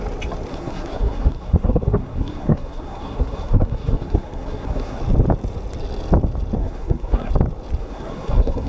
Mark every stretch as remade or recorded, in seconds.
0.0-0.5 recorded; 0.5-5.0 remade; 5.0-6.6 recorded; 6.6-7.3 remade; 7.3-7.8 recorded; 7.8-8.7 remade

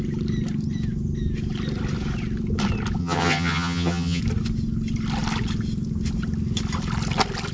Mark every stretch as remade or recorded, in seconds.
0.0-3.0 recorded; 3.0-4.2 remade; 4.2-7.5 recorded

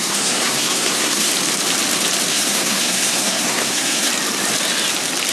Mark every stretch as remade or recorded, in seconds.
0.0-1.3 remade; 1.3-2.3 recorded; 2.3-4.1 remade; 4.1-5.3 recorded